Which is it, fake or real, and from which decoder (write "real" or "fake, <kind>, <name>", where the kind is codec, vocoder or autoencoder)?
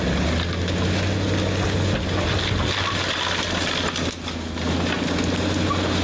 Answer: real